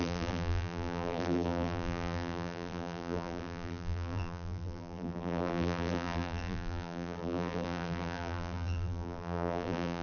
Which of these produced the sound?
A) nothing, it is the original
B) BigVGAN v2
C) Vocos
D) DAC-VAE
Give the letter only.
B